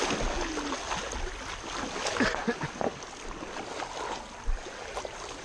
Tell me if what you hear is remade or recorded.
recorded